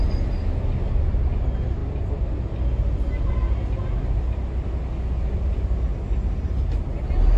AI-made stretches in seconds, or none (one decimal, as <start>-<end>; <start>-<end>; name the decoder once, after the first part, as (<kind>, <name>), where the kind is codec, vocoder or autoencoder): none